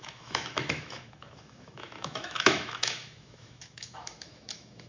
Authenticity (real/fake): fake